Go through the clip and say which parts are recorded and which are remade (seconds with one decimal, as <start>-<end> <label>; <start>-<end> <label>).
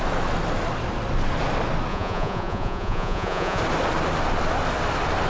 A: 0.0-1.9 recorded; 1.9-3.6 remade; 3.6-5.3 recorded